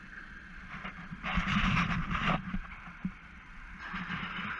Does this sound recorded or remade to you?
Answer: remade